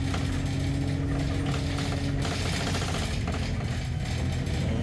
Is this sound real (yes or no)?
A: yes